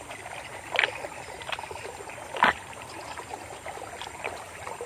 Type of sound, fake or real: real